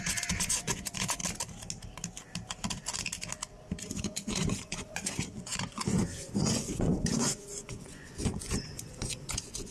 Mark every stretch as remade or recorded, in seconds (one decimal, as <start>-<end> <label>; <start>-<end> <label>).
0.0-1.2 remade; 1.2-3.9 recorded; 3.9-9.7 remade